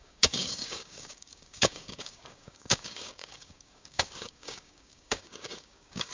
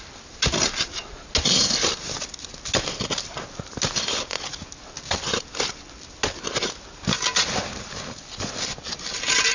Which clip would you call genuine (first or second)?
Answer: second